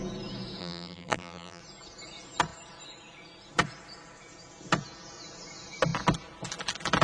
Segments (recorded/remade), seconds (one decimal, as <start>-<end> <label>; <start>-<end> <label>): 0.0-0.6 recorded; 0.6-1.6 remade; 1.6-7.0 recorded